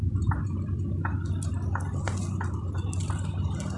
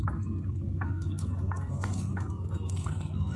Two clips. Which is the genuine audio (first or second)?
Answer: first